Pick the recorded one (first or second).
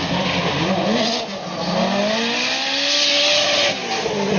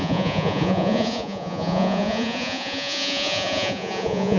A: first